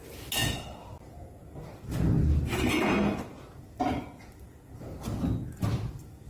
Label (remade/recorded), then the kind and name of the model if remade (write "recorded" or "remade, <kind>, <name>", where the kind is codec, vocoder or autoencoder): recorded